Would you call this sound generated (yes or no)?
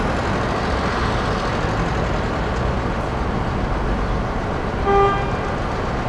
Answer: no